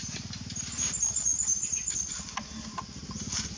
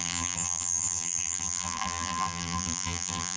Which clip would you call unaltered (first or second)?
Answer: first